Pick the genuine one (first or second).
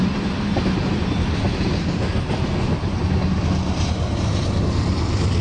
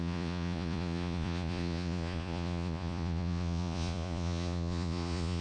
first